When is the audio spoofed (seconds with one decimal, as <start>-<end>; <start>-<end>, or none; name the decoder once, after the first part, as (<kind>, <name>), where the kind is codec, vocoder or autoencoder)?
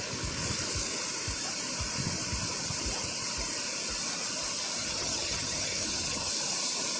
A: 4.8-6.3 (vocoder, HiFi-GAN)